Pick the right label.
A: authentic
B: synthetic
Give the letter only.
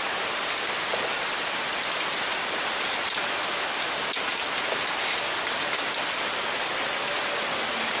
A